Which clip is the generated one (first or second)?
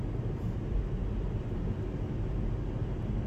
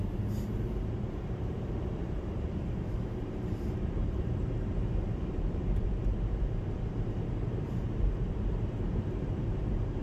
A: second